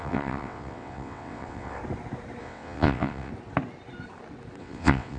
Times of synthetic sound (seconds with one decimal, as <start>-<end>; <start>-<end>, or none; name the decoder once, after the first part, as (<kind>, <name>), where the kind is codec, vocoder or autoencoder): 0.0-1.8 (vocoder, WaveNeXt); 2.4-3.3; 4.6-5.2